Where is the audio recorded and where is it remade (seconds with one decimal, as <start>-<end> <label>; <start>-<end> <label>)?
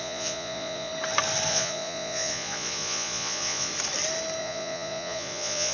0.0-0.9 remade; 0.9-1.5 recorded; 1.5-3.7 remade; 3.7-4.4 recorded; 4.4-5.7 remade